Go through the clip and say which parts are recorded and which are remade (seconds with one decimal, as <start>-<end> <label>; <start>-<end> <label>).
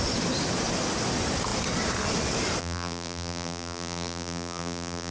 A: 0.0-2.6 recorded; 2.6-5.1 remade